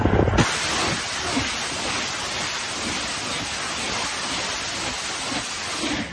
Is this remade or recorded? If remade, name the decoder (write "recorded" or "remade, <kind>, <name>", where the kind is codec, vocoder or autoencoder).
recorded